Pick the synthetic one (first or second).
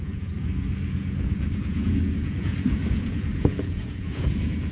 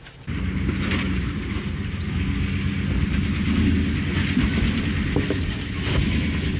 first